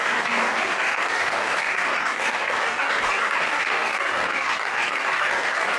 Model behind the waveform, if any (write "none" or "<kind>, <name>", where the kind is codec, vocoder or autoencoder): codec, DAC